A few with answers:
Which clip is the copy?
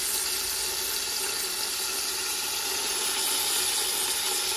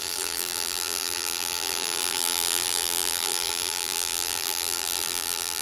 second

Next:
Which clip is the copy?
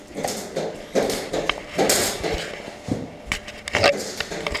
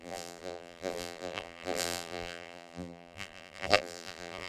second